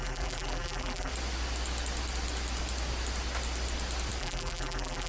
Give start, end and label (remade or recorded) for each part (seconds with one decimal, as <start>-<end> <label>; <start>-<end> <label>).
0.0-1.1 remade; 1.1-4.2 recorded; 4.2-5.1 remade